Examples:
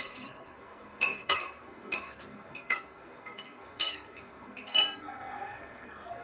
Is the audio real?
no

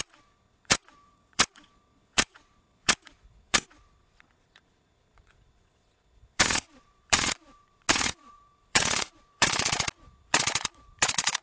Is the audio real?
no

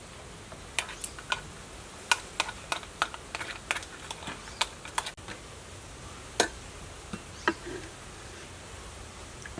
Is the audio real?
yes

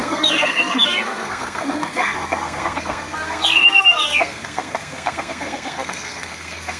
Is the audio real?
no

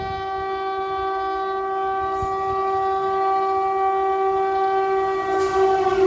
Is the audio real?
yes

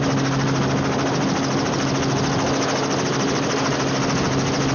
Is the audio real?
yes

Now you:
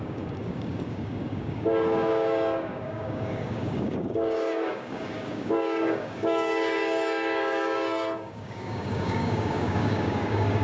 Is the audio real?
no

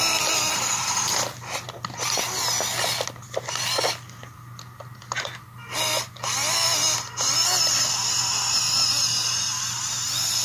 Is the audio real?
yes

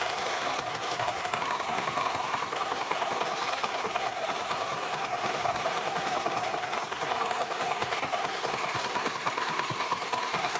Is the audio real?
no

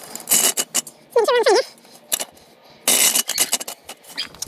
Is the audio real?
yes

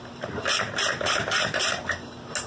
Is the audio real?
yes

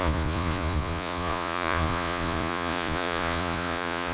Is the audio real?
no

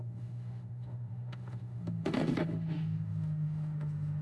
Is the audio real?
no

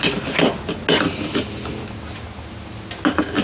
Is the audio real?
yes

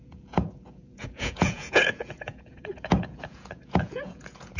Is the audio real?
no